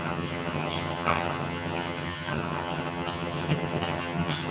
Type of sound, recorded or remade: remade